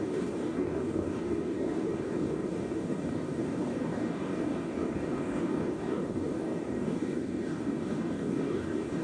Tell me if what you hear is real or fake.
fake